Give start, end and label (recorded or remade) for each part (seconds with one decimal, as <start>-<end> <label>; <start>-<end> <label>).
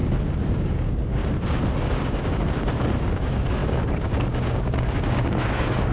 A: 0.0-0.5 recorded; 0.5-1.2 remade; 1.2-1.9 recorded; 1.9-2.4 remade; 2.4-3.0 recorded; 3.0-5.9 remade